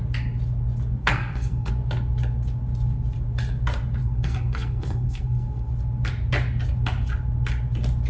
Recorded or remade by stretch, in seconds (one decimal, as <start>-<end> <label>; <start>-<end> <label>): 0.0-1.0 recorded; 1.0-1.7 remade; 1.7-4.0 recorded; 4.0-5.7 remade; 5.7-8.1 recorded